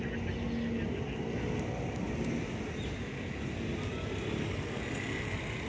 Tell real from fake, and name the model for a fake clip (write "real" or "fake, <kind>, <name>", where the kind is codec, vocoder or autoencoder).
real